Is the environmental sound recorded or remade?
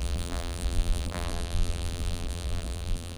remade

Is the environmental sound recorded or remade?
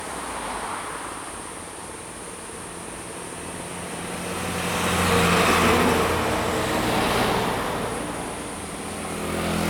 recorded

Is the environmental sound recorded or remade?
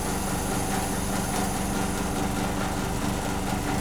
recorded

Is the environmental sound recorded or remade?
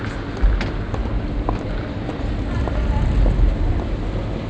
recorded